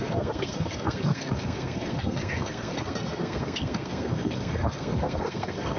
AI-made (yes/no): yes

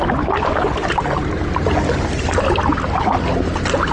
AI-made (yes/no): no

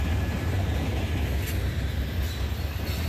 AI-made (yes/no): no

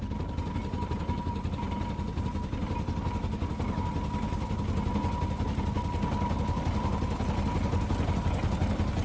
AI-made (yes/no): no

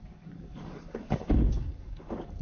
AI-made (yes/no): yes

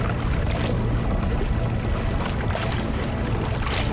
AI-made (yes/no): no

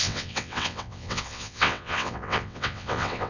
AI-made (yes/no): yes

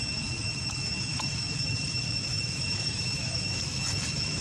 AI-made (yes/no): yes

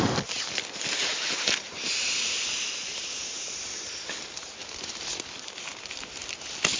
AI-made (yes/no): no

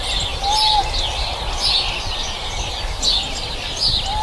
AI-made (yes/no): no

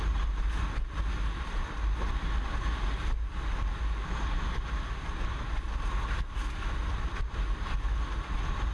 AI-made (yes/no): no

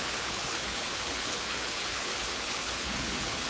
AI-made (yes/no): yes